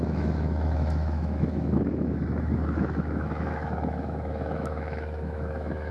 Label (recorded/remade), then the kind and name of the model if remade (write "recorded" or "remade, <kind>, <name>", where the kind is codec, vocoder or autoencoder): remade, autoencoder, DAC-VAE